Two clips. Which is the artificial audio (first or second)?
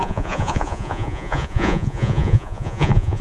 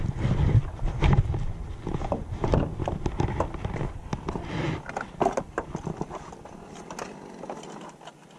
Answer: first